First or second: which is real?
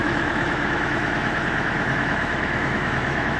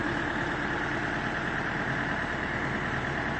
second